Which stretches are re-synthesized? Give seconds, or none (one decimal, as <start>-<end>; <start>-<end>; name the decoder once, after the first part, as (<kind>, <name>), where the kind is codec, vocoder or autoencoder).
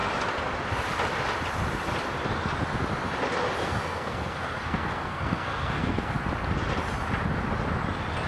3.6-6.2 (codec, SNAC)